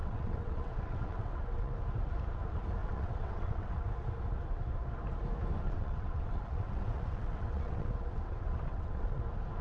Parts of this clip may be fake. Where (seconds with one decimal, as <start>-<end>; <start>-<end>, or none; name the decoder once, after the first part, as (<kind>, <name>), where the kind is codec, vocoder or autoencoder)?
0.0-1.7 (vocoder, WaveNeXt); 2.8-3.8; 5.6-9.2